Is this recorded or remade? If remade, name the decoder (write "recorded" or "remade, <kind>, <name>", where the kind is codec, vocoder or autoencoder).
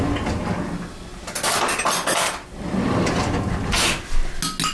recorded